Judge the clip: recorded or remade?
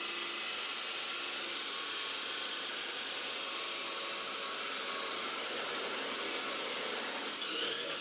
recorded